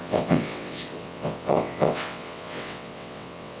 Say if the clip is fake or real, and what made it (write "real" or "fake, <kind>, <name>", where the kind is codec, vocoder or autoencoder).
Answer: fake, vocoder, WaveNeXt